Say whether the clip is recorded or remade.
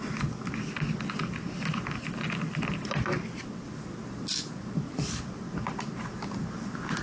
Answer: recorded